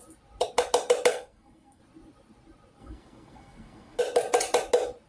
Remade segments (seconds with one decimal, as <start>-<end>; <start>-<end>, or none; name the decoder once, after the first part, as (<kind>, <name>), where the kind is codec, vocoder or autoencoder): 1.1-1.8 (codec, SNAC); 2.8-4.0